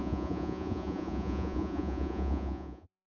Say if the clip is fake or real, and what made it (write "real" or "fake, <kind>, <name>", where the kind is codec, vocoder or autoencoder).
fake, vocoder, Vocos